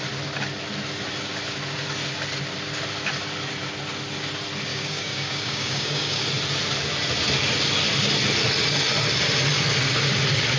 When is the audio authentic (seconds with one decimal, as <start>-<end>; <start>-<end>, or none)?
0.0-4.7; 6.2-10.6